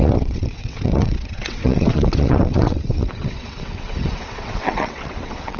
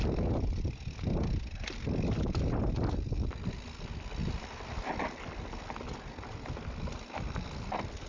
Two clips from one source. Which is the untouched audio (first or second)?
second